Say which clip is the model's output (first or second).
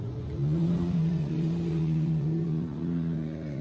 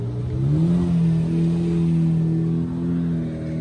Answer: first